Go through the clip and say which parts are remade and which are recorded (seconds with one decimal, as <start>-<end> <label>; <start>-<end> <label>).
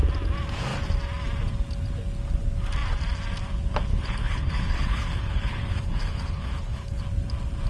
0.0-3.9 recorded; 3.9-7.0 remade; 7.0-7.7 recorded